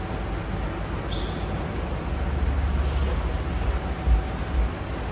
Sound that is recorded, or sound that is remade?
recorded